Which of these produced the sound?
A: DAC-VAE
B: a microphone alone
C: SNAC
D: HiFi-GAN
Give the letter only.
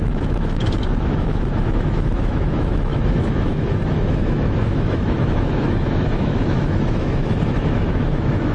A